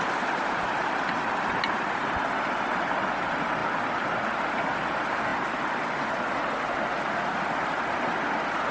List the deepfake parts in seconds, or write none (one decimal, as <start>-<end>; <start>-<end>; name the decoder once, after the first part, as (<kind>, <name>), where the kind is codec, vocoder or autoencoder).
none